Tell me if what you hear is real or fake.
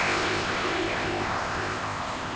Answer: fake